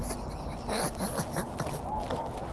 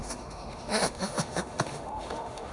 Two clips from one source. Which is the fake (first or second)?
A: second